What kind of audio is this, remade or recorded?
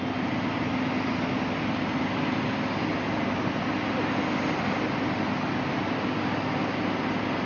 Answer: recorded